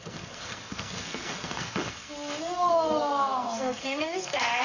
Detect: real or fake fake